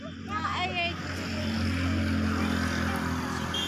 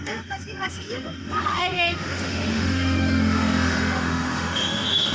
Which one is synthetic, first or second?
second